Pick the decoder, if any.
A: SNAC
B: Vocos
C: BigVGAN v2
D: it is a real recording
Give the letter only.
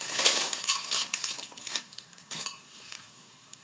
A